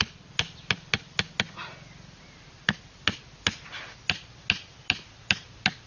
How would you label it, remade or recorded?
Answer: recorded